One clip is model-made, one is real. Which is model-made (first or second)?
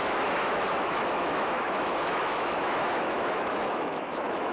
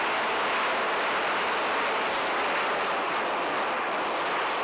first